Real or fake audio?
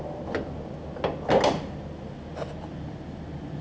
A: real